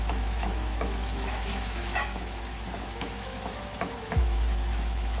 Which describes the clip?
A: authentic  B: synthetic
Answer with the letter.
B